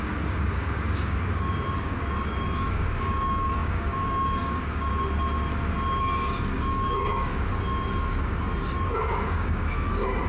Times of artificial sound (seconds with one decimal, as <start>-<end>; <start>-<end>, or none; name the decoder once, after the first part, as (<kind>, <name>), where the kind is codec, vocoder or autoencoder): 0.0-4.9 (codec, DAC); 6.0-10.3